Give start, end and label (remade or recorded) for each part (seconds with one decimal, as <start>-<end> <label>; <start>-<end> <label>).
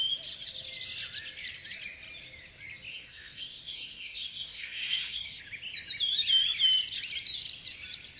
0.0-2.9 recorded; 2.9-5.4 remade; 5.4-8.2 recorded